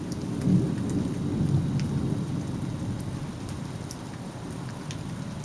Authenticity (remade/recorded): recorded